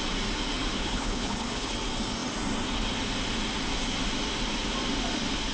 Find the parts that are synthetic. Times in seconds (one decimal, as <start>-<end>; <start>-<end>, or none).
0.7-1.7